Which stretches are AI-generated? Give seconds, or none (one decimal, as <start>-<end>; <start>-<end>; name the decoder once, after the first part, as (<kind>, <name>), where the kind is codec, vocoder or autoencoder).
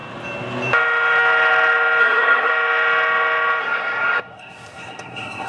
2.0-2.5 (codec, SNAC); 3.6-5.5